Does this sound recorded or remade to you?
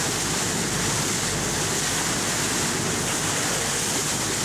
remade